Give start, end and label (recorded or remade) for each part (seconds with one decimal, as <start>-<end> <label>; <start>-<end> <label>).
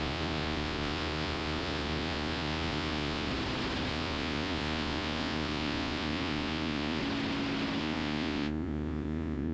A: 0.0-3.3 remade; 3.3-3.9 recorded; 3.9-7.0 remade; 7.0-7.8 recorded; 7.8-9.5 remade